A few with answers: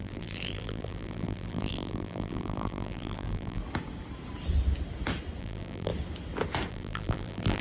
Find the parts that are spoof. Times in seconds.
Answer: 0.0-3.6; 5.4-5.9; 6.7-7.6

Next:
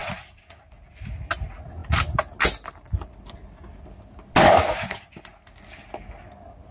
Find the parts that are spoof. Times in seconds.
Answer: 0.0-0.6